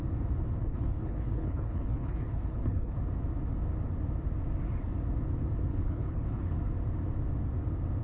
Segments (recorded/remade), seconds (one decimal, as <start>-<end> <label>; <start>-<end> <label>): 0.0-0.6 recorded; 0.6-3.0 remade; 3.0-5.7 recorded; 5.7-6.6 remade; 6.6-8.0 recorded